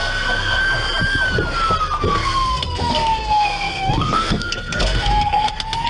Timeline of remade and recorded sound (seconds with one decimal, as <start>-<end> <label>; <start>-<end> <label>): 0.0-0.6 remade; 0.6-2.1 recorded; 2.1-5.5 remade; 5.5-5.9 recorded